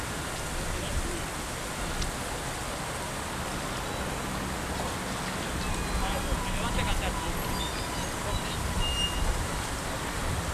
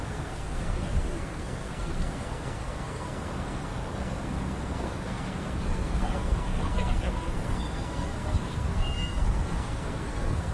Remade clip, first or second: second